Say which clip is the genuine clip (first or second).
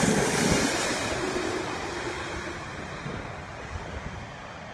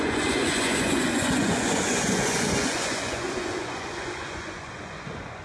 first